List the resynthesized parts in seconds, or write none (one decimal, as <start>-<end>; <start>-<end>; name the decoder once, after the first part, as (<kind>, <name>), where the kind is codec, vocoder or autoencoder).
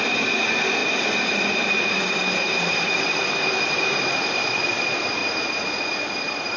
0.8-4.8 (vocoder, BigVGAN v2)